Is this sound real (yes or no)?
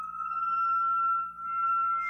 yes